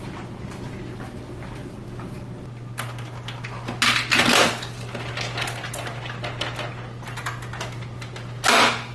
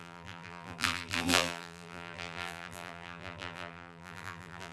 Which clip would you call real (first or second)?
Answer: first